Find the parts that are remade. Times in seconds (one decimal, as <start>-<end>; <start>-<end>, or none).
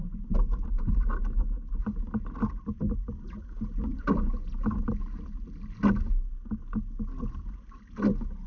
none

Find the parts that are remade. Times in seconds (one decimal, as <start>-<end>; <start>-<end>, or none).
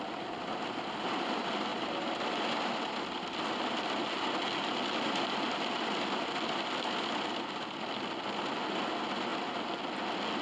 none